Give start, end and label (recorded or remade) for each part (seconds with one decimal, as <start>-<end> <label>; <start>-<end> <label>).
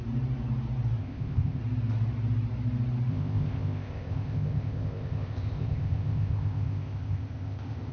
0.0-1.0 recorded; 1.0-1.6 remade; 1.6-3.1 recorded; 3.1-7.9 remade